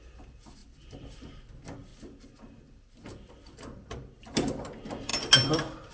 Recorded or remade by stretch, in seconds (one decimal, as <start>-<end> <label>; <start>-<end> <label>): 0.0-0.6 recorded; 0.6-1.3 remade; 1.3-5.9 recorded